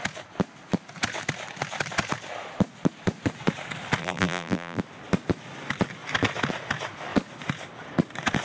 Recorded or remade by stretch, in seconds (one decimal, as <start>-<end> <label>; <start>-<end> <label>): 0.0-4.0 recorded; 4.0-4.8 remade; 4.8-8.4 recorded

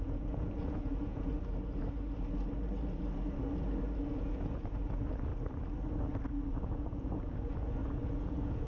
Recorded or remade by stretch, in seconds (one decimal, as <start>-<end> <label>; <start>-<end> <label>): 0.0-1.3 remade; 1.3-4.1 recorded; 4.1-5.3 remade; 5.3-6.6 recorded; 6.6-8.7 remade

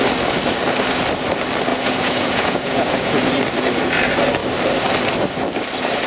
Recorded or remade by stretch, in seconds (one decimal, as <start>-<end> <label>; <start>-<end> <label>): 0.0-1.7 recorded; 1.7-3.3 remade; 3.3-6.1 recorded